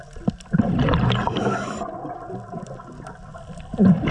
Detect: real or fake fake